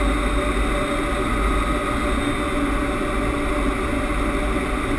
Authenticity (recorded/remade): recorded